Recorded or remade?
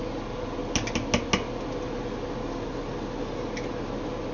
recorded